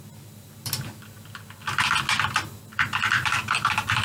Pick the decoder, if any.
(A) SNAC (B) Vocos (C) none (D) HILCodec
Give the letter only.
C